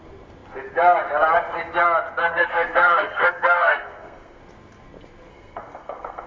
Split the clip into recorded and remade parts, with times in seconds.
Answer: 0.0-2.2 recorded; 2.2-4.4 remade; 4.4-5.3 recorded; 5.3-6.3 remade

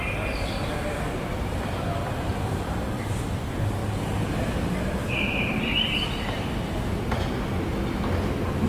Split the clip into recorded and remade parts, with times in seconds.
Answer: 0.0-8.7 recorded